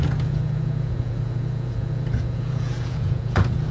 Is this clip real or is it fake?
fake